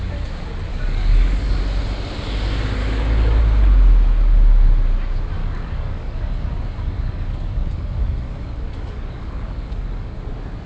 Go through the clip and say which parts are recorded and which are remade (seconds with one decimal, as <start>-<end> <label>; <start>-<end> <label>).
0.0-0.7 recorded; 0.7-1.6 remade; 1.6-2.8 recorded; 2.8-3.4 remade; 3.4-5.4 recorded; 5.4-10.2 remade; 10.2-10.7 recorded